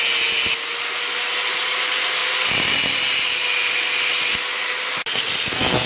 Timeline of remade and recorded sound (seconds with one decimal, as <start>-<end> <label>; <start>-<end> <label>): 0.0-5.9 recorded